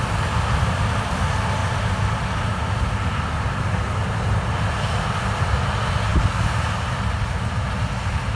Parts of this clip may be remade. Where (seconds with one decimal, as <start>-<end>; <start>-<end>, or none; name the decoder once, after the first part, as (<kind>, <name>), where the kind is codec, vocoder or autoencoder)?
none